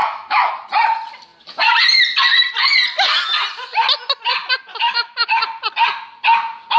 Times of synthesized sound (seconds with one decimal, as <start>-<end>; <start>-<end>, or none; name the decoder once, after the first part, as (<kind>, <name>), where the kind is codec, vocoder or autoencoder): 0.0-0.5 (autoencoder, DAC-VAE); 4.7-5.4